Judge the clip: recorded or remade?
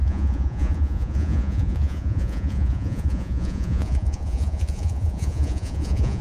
remade